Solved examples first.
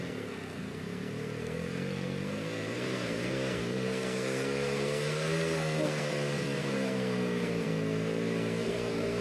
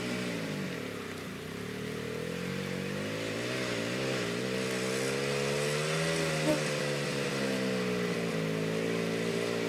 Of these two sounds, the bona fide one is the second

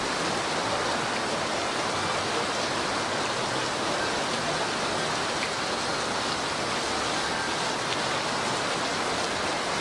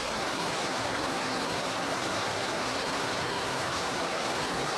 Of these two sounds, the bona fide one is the first